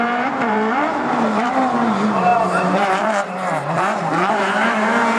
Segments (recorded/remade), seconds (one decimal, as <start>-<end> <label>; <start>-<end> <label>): 0.0-5.2 remade